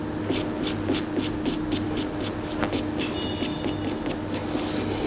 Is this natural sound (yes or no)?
yes